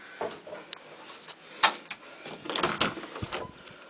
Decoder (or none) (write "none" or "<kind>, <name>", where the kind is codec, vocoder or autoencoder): none